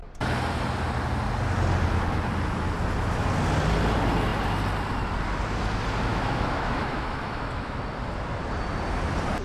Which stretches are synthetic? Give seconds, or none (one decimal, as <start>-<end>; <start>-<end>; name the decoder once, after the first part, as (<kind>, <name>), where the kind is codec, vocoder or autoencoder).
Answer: 6.1-7.8 (autoencoder, DAC-VAE)